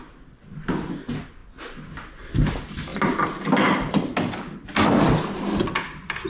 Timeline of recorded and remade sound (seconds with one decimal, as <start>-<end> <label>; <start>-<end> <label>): 0.0-6.3 recorded